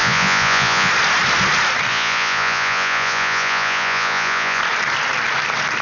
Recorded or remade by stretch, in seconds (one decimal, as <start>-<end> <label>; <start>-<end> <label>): 0.0-0.9 remade; 0.9-1.9 recorded; 1.9-4.6 remade; 4.6-5.8 recorded